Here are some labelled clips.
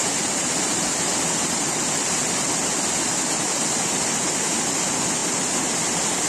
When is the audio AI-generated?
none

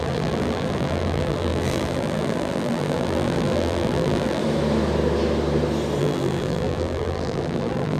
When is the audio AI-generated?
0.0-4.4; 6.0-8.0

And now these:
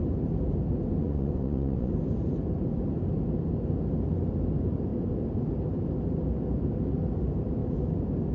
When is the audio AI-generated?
1.0-1.9

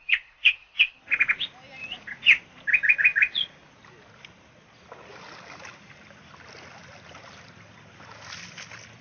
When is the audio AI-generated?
0.0-0.8; 1.8-2.4

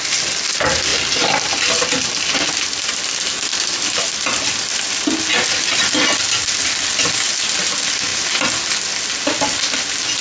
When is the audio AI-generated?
none

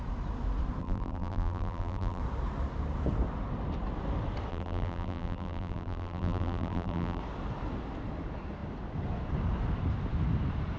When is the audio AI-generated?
0.8-2.2; 4.5-7.2

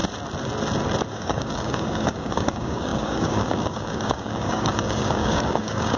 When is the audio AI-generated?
1.1-6.0

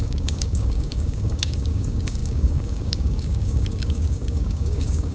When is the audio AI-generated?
0.0-5.1